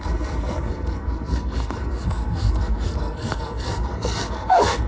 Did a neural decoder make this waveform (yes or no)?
yes